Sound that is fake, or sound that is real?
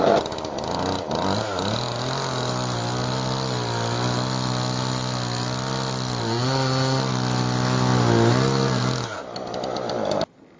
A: real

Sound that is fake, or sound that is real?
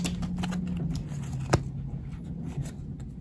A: real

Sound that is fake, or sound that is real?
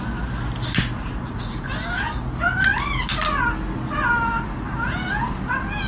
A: real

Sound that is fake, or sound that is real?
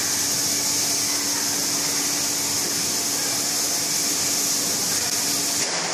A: real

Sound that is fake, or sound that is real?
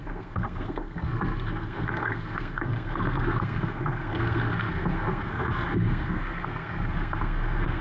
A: fake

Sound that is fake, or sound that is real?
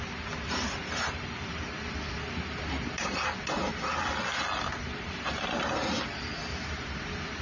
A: real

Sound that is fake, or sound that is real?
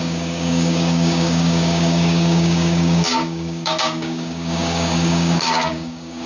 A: fake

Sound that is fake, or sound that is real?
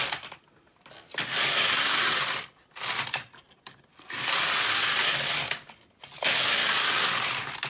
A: real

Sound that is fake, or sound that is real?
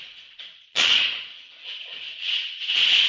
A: fake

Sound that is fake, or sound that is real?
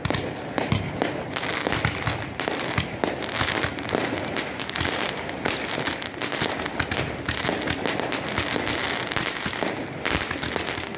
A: real